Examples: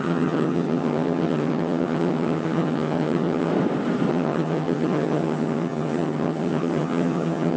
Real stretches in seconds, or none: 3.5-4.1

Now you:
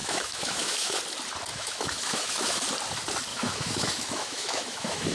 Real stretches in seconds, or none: 1.0-1.5; 2.6-3.3

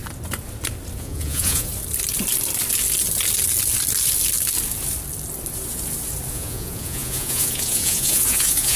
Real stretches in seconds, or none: 0.0-1.0; 1.7-6.3

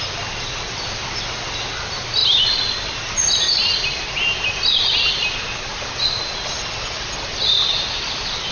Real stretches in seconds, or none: 0.0-8.5

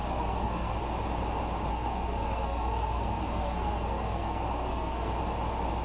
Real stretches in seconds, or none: 0.8-1.7; 5.2-5.8